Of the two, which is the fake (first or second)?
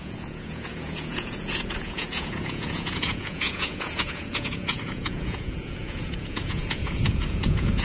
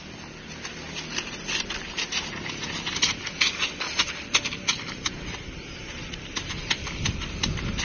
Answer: first